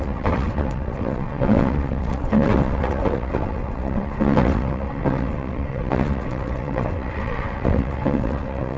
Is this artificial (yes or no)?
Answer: yes